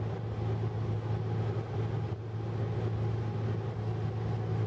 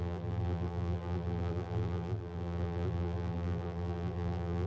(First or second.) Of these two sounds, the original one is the first